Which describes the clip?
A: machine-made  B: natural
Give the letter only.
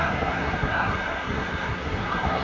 A